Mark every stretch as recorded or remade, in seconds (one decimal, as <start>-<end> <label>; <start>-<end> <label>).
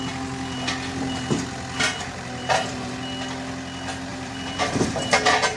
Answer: 0.0-1.9 recorded; 1.9-2.9 remade; 2.9-4.1 recorded; 4.1-5.6 remade